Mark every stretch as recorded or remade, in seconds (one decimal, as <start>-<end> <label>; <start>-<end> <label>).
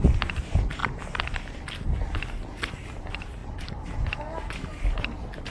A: 0.0-0.8 remade; 0.8-2.7 recorded; 2.7-3.4 remade; 3.4-4.5 recorded; 4.5-5.5 remade